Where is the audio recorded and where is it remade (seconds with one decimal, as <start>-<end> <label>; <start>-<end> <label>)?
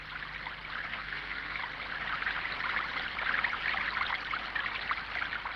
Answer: 0.0-0.9 recorded; 0.9-1.6 remade; 1.6-5.6 recorded